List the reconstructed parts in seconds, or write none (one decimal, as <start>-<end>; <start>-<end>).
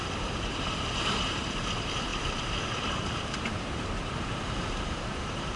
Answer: 0.0-5.6